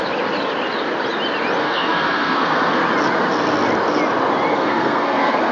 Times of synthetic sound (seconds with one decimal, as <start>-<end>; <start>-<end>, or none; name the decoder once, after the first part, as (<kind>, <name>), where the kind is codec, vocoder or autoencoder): 1.6-2.8 (codec, SNAC); 4.5-5.5